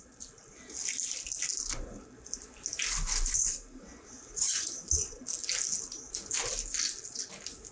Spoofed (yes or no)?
no